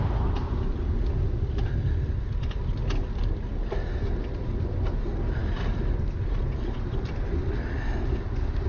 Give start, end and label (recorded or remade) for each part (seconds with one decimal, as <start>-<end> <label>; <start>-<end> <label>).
0.0-8.7 recorded